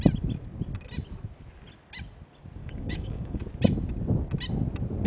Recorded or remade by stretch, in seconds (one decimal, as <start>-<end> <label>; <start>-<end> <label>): 0.0-2.6 recorded; 2.6-3.4 remade; 3.4-5.1 recorded